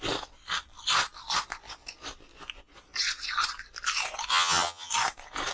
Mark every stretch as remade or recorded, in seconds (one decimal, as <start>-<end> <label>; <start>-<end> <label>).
0.0-4.3 recorded; 4.3-4.9 remade; 4.9-5.5 recorded